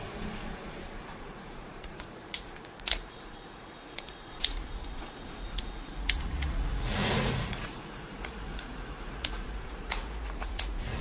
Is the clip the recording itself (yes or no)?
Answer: no